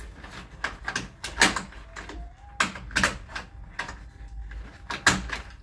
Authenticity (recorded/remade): recorded